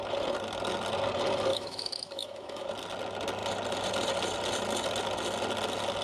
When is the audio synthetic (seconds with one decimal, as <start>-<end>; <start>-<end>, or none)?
1.5-2.7